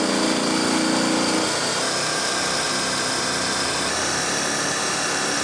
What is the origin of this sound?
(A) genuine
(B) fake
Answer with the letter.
A